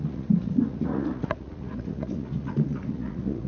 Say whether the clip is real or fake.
fake